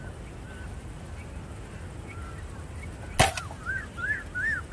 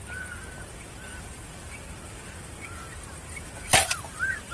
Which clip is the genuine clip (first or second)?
first